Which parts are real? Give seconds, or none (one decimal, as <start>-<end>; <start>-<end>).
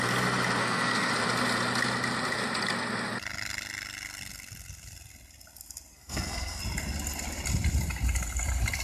0.0-0.6; 1.1-5.9; 6.6-8.8